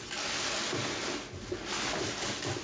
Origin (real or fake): real